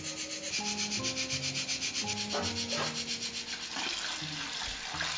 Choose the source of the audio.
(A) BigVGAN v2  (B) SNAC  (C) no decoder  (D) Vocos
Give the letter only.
C